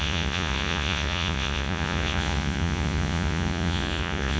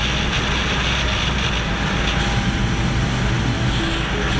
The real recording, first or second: second